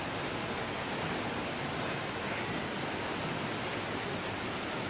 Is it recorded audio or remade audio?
recorded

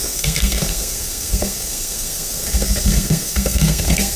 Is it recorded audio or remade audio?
remade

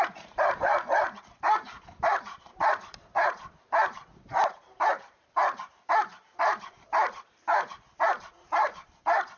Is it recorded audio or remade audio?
remade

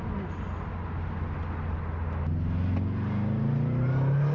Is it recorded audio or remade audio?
recorded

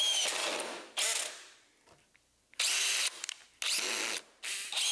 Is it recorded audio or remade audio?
recorded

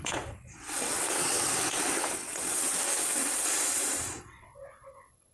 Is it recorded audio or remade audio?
remade